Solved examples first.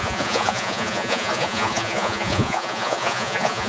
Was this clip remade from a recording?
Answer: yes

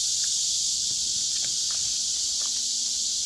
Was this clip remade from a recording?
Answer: no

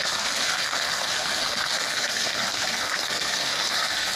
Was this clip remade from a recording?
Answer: yes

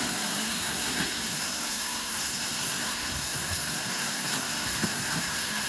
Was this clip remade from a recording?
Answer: yes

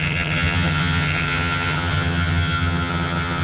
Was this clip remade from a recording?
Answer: yes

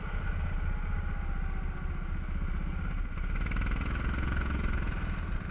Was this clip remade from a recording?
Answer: no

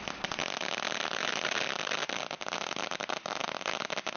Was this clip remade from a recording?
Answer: no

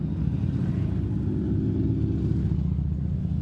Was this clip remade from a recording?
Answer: no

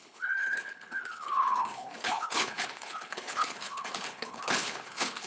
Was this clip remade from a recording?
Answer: yes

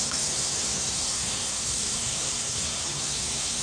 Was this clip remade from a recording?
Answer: yes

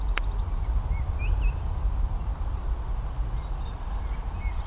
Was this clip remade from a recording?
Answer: no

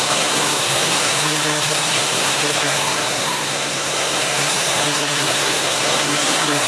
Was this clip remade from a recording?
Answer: yes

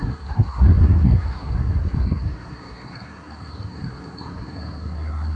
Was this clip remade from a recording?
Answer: yes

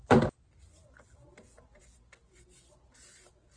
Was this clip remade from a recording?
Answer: no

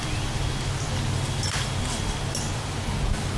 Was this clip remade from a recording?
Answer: no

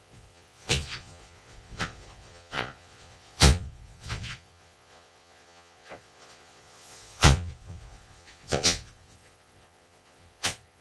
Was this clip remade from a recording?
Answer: yes